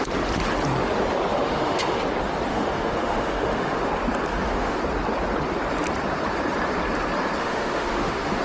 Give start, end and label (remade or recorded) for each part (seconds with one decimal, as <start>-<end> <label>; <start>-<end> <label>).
0.0-1.3 recorded; 1.3-2.0 remade; 2.0-2.5 recorded; 2.5-3.9 remade; 3.9-4.3 recorded; 4.3-4.8 remade; 4.8-7.4 recorded; 7.4-8.4 remade